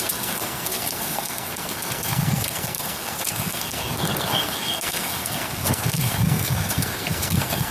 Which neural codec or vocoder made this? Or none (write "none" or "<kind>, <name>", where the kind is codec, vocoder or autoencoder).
codec, SNAC